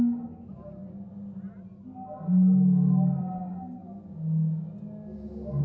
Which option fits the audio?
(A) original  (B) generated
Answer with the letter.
A